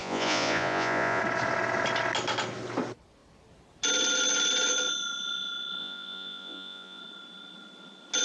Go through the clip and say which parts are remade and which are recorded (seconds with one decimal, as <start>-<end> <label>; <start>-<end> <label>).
0.0-1.2 remade; 1.2-5.8 recorded; 5.8-7.0 remade; 7.0-8.2 recorded